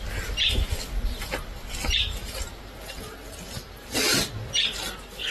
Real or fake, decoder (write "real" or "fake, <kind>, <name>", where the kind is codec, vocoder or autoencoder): real